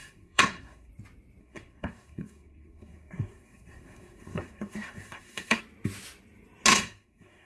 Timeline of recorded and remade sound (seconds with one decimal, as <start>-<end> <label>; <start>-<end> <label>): 0.0-0.9 remade; 0.9-1.4 recorded; 1.4-5.6 remade; 5.6-6.7 recorded; 6.7-7.5 remade